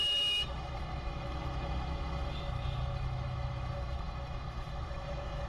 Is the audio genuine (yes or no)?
no